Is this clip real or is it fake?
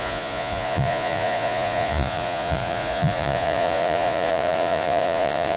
fake